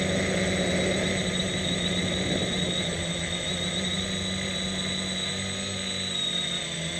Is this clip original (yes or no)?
yes